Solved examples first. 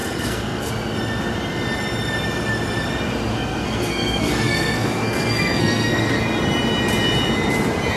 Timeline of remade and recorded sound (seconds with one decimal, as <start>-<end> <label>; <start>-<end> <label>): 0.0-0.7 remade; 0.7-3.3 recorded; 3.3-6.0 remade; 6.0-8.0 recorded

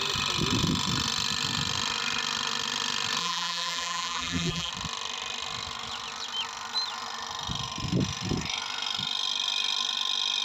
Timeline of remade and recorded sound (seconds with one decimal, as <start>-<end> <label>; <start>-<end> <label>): 0.0-3.2 recorded; 3.2-4.7 remade; 4.7-10.4 recorded

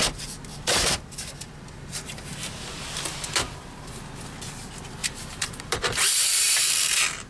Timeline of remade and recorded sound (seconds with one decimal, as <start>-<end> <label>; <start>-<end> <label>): 0.0-0.5 recorded; 0.5-3.9 remade; 3.9-5.0 recorded; 5.0-6.7 remade; 6.7-7.3 recorded

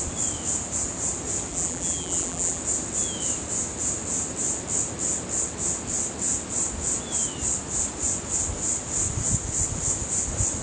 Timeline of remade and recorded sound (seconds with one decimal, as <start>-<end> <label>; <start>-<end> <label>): 0.0-1.5 recorded; 1.5-2.6 remade; 2.6-10.6 recorded